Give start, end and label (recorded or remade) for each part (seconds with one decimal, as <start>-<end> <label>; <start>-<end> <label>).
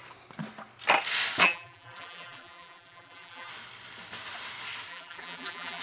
0.0-1.4 recorded; 1.4-3.5 remade; 3.5-4.9 recorded; 4.9-5.8 remade